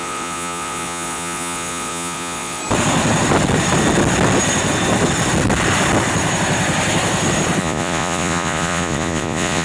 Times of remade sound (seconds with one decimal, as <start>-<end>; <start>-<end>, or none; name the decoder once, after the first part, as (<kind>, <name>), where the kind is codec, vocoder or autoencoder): 0.0-2.6 (vocoder, Vocos); 7.6-9.6